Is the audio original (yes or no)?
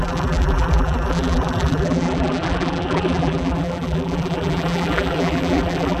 no